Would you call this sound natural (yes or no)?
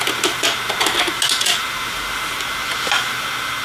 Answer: yes